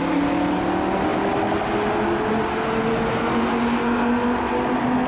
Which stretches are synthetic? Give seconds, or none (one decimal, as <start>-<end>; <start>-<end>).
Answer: none